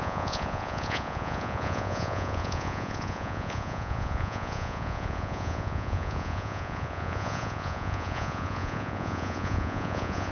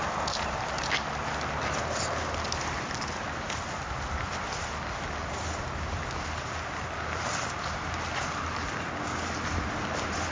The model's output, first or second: first